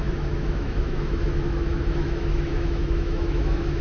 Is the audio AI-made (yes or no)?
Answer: yes